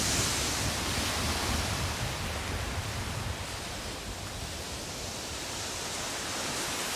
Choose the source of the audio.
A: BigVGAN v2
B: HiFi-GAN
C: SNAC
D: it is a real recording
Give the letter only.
D